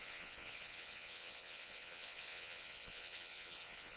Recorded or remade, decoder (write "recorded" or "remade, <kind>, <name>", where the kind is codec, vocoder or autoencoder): remade, vocoder, WaveNeXt